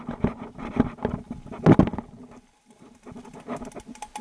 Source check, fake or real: real